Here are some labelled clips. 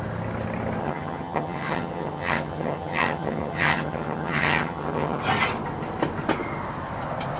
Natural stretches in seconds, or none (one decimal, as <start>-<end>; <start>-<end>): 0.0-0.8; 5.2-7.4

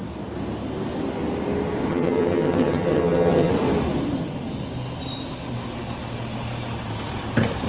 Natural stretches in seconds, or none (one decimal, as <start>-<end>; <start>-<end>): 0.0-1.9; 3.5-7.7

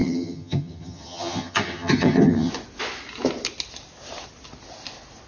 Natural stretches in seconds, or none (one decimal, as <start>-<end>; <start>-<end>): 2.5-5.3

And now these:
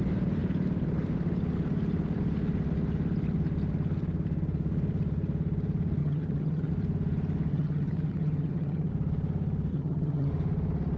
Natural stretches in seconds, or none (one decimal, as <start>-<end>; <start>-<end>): 0.0-6.0; 6.7-7.5; 8.9-9.7; 10.3-11.0

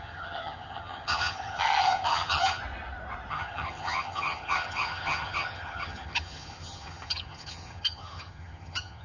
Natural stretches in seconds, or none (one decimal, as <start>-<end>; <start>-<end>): 2.6-3.3